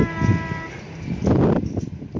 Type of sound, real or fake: real